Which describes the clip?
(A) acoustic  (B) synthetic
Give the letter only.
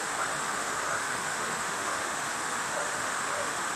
B